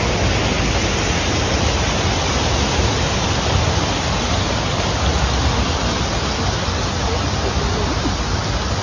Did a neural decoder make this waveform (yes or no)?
no